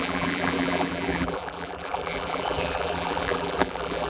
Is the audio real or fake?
fake